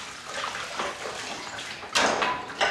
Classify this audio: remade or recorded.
recorded